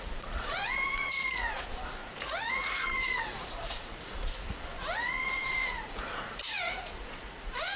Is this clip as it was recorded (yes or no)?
no